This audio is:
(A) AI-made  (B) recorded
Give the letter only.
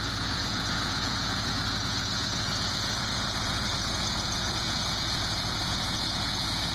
A